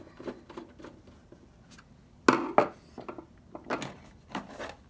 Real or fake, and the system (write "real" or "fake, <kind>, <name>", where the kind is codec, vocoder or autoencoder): real